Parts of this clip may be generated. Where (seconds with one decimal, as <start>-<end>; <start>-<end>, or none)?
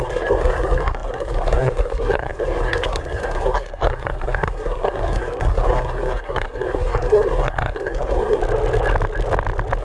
0.0-8.4